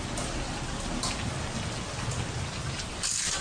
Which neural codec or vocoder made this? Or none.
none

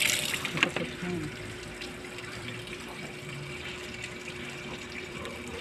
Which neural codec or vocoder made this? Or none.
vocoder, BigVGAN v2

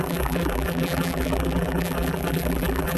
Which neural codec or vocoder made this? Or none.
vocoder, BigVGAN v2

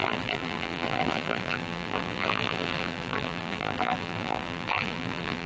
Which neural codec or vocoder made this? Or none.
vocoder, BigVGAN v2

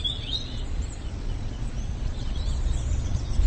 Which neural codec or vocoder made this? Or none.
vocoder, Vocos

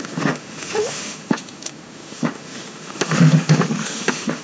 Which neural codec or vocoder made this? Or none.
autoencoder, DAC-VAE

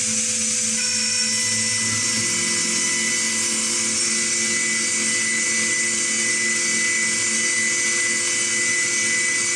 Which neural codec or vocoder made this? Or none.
none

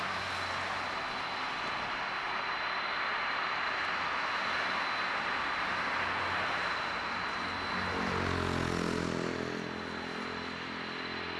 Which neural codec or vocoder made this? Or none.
none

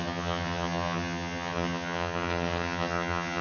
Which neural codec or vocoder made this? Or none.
vocoder, HiFi-GAN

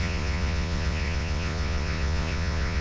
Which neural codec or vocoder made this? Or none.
vocoder, Vocos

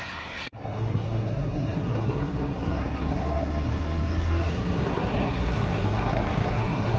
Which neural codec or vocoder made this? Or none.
codec, SNAC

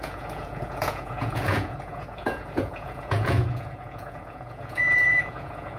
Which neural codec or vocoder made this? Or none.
vocoder, Vocos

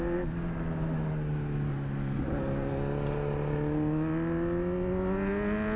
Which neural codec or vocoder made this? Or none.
none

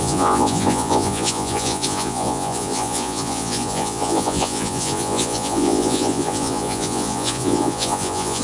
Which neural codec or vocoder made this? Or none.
vocoder, Vocos